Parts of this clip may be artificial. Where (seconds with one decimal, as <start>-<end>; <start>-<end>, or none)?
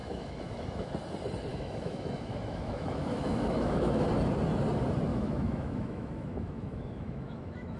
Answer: 0.0-0.9; 1.5-4.0; 5.1-7.8